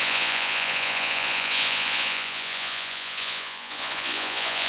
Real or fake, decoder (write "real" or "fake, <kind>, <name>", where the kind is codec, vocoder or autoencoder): fake, vocoder, Vocos